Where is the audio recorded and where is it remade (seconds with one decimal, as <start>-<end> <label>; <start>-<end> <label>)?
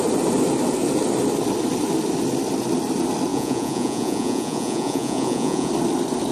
0.0-3.3 recorded; 3.3-5.7 remade; 5.7-6.3 recorded